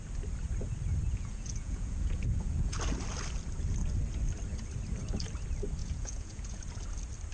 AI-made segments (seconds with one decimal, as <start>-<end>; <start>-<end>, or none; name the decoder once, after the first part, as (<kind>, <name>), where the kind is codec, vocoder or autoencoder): 1.1-2.8 (vocoder, Vocos); 5.8-6.6